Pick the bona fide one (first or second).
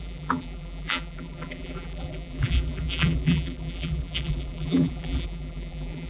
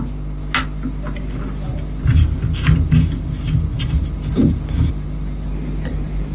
second